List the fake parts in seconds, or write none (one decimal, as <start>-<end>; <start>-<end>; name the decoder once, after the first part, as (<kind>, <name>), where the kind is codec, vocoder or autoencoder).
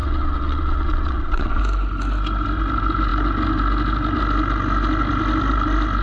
0.0-1.6 (vocoder, WaveNeXt)